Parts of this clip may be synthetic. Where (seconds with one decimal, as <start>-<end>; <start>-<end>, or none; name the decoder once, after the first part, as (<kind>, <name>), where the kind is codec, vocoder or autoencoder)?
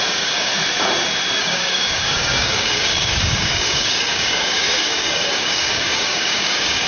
0.0-0.5 (codec, DAC); 1.4-6.9